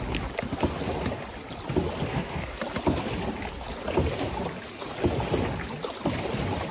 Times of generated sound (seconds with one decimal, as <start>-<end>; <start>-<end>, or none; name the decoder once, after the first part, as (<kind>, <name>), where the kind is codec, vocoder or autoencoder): 2.1-2.6 (codec, SNAC)